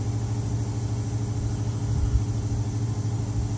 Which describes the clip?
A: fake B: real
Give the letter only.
B